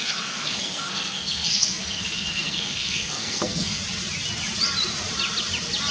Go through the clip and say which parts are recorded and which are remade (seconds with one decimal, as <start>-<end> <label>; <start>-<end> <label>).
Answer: 0.0-3.8 remade; 3.8-5.9 recorded